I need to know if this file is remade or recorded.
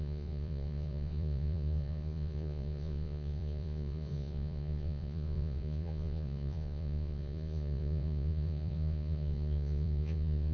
remade